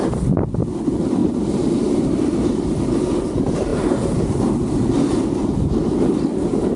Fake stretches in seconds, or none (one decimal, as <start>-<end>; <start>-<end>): 1.2-3.0; 3.7-4.4